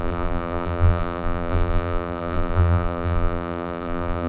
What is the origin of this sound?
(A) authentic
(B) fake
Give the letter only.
B